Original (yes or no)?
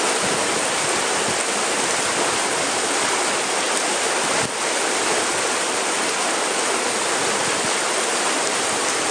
yes